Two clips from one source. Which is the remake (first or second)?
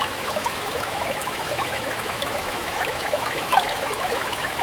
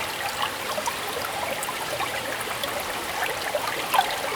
first